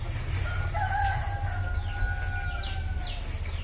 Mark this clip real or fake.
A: real